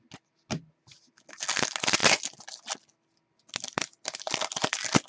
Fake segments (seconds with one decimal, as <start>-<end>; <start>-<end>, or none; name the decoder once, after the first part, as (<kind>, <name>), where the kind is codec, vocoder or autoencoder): none